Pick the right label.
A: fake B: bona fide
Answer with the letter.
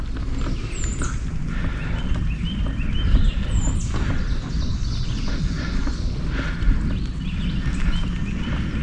B